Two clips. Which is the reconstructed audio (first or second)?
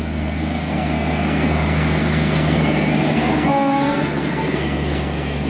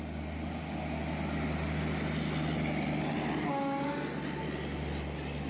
first